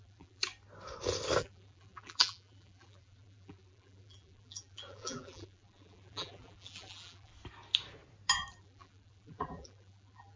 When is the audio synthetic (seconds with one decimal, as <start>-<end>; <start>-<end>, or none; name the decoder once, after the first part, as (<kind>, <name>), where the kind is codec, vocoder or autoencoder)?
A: 0.0-0.4 (vocoder, BigVGAN v2); 1.4-7.3; 8.6-10.4